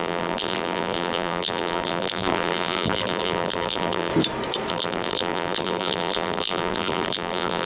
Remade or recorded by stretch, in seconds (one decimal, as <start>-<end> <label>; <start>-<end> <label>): 0.0-4.1 remade; 4.1-4.7 recorded; 4.7-7.7 remade